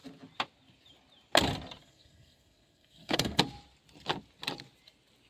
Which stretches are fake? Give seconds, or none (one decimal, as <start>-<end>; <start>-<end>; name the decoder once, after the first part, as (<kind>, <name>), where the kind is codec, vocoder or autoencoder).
1.8-3.4 (codec, SNAC)